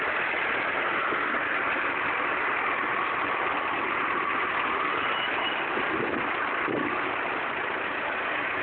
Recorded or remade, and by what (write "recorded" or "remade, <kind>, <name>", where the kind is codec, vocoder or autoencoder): recorded